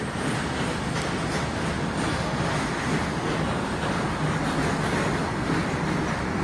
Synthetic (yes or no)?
no